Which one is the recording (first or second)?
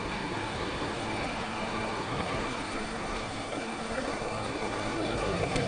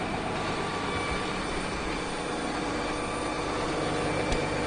second